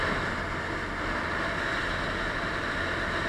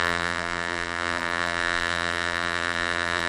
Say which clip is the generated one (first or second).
second